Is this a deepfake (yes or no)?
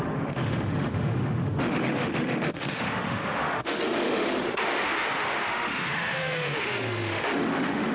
yes